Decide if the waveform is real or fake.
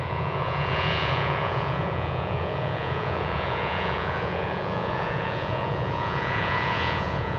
fake